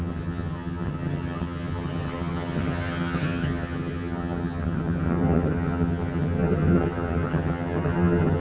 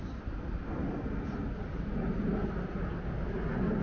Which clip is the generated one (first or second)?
first